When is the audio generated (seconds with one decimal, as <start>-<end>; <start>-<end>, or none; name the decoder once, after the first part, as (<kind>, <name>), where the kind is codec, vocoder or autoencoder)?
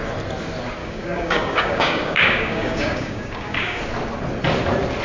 0.8-3.8 (codec, DAC)